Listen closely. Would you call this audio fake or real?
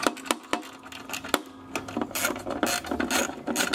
real